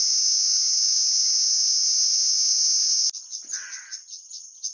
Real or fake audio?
real